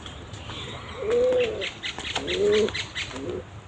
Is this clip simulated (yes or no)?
no